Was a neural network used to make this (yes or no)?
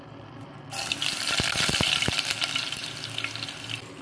yes